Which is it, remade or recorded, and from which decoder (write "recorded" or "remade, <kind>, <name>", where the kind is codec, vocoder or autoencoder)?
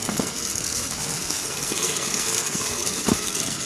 remade, codec, SNAC